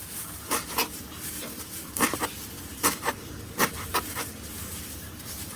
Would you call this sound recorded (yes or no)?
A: no